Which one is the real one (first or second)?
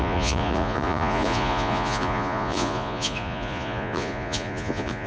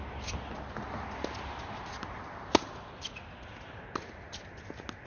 second